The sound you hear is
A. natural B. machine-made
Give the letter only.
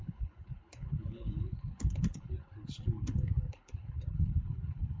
B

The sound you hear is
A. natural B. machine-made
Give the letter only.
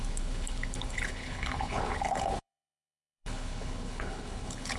B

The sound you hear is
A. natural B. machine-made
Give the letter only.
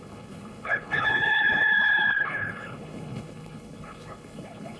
B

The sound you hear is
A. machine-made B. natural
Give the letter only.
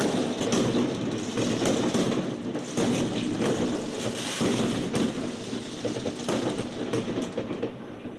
B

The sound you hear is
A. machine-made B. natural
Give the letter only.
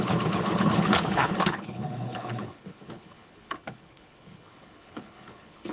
A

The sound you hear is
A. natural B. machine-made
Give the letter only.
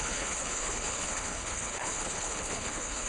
B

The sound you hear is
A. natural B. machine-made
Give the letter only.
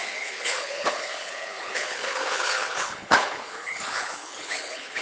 B